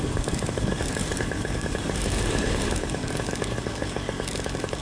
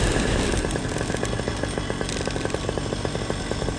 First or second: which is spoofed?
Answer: first